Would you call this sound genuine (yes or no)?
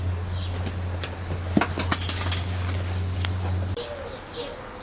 yes